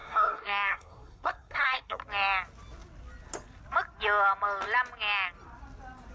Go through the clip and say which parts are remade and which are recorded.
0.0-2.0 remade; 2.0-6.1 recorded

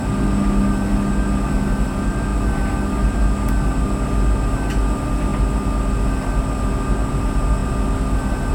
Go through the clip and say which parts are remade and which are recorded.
0.0-8.5 recorded

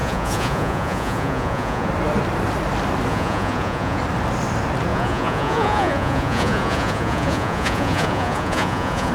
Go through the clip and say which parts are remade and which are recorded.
0.0-1.9 remade; 1.9-3.1 recorded; 3.1-4.0 remade; 4.0-4.9 recorded; 4.9-9.1 remade

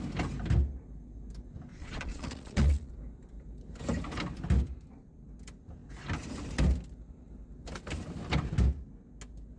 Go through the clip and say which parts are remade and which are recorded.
0.0-1.7 recorded; 1.7-2.9 remade; 2.9-9.6 recorded